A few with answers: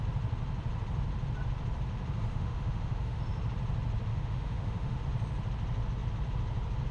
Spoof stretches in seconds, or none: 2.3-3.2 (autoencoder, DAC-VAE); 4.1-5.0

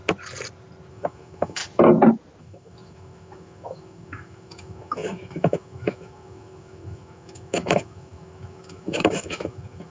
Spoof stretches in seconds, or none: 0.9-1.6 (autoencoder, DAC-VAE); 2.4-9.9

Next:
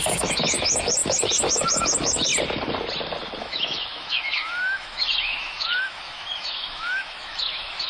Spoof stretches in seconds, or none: 0.0-2.3 (autoencoder, DAC-VAE); 3.4-7.9

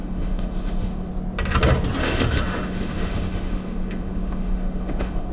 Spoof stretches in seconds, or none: 0.0-1.1 (autoencoder, DAC-VAE); 2.0-5.3